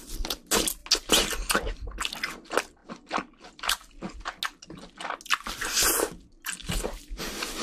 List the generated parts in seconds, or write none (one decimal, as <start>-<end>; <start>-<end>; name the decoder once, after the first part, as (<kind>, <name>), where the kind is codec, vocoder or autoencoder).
none